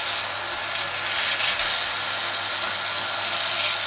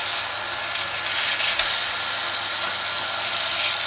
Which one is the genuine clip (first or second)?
first